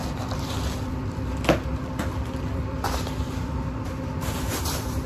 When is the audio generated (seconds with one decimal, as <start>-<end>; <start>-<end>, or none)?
0.0-1.1; 1.7-5.1